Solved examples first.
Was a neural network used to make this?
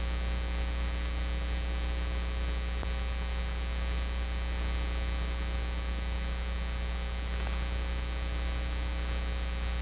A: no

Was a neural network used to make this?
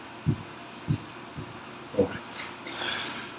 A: no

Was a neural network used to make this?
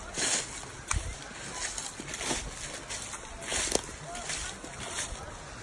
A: no